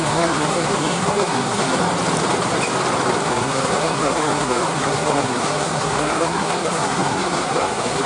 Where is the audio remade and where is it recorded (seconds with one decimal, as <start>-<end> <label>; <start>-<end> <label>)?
0.0-1.8 remade; 1.8-3.2 recorded; 3.2-8.1 remade